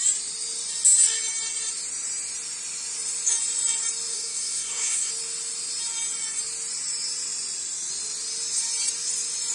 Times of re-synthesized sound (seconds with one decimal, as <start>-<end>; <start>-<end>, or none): 4.1-5.1